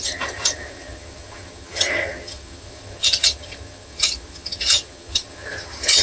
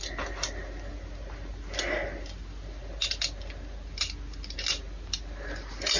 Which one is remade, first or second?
first